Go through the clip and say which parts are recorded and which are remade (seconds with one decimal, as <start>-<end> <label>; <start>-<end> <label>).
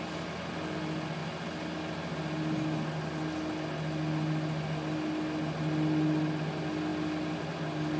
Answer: 0.0-8.0 recorded